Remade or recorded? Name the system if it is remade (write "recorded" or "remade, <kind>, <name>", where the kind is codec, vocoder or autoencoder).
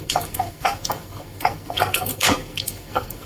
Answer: remade, codec, SNAC